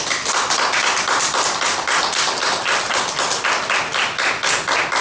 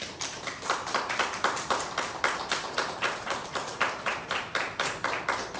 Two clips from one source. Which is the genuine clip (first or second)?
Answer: first